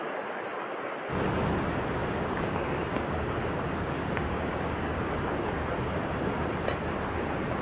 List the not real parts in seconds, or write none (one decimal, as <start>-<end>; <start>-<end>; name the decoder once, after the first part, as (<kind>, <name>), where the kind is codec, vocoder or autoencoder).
2.0-5.5 (codec, DAC)